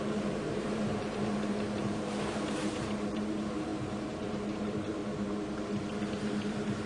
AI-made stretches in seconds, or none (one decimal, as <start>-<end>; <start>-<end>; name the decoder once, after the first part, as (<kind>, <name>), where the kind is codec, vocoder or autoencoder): 0.0-5.0 (vocoder, BigVGAN v2); 6.1-6.9